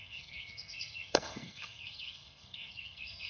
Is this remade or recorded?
remade